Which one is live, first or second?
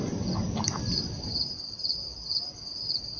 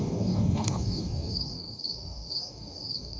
first